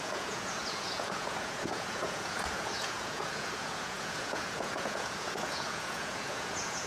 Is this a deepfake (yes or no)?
yes